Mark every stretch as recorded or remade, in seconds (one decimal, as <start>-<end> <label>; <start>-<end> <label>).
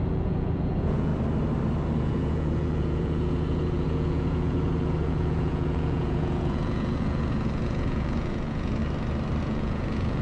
0.0-1.1 remade; 1.1-2.0 recorded; 2.0-8.8 remade; 8.8-9.4 recorded; 9.4-10.2 remade